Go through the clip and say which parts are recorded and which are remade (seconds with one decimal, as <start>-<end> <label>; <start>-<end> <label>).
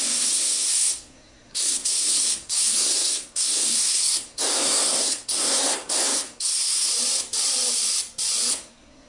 0.0-6.9 remade; 6.9-8.5 recorded; 8.5-9.1 remade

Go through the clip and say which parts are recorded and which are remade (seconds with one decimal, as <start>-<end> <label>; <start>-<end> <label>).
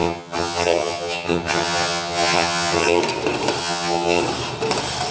0.0-3.0 remade; 3.0-3.6 recorded; 3.6-4.2 remade; 4.2-5.1 recorded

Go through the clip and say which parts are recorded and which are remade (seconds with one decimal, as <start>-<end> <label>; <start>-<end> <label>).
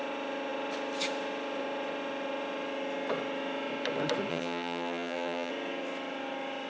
0.0-4.3 recorded; 4.3-5.5 remade; 5.5-6.7 recorded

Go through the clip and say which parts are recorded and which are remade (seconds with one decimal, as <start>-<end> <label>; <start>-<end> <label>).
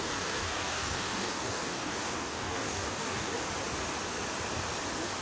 0.0-3.3 remade; 3.3-5.2 recorded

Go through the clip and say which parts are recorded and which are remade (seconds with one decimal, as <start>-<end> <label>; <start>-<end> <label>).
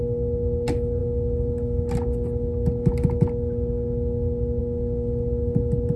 0.0-6.0 recorded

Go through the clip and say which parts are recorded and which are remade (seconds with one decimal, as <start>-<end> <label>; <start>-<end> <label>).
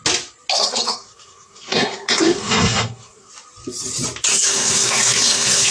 0.0-0.5 recorded; 0.5-3.3 remade; 3.3-4.3 recorded; 4.3-5.7 remade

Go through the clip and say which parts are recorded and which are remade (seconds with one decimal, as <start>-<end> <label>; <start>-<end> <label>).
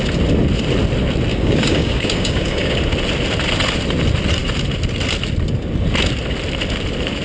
0.0-1.3 recorded; 1.3-2.8 remade; 2.8-7.2 recorded